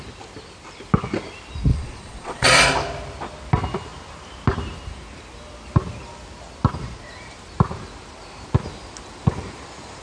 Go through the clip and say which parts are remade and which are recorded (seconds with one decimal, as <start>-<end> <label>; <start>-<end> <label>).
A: 0.0-1.7 recorded; 1.7-2.5 remade; 2.5-10.0 recorded